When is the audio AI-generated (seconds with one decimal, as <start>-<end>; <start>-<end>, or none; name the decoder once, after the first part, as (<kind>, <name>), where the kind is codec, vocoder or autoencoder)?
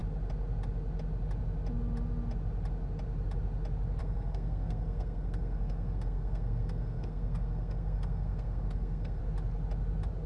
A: 4.0-9.2 (codec, SNAC)